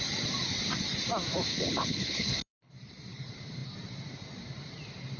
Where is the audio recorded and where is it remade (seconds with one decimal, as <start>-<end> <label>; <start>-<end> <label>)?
0.0-1.5 recorded; 1.5-2.7 remade; 2.7-5.2 recorded

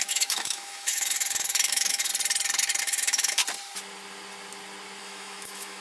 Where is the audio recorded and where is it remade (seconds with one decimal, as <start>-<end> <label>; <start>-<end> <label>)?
0.0-2.1 remade; 2.1-2.8 recorded; 2.8-3.4 remade; 3.4-5.0 recorded; 5.0-5.8 remade

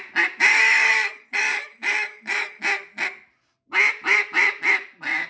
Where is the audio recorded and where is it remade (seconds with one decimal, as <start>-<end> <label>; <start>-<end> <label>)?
0.0-0.5 recorded; 0.5-2.6 remade; 2.6-5.3 recorded

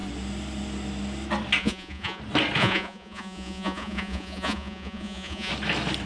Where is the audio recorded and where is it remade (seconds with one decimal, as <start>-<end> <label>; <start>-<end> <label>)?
0.0-1.6 recorded; 1.6-2.2 remade; 2.2-2.6 recorded; 2.6-5.5 remade; 5.5-6.1 recorded

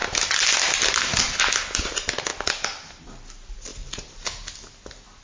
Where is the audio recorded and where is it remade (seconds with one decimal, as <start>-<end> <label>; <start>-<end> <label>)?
0.0-5.2 recorded

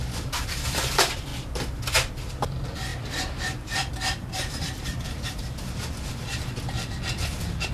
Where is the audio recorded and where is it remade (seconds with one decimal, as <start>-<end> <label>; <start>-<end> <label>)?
0.0-1.3 remade; 1.3-2.2 recorded; 2.2-7.7 remade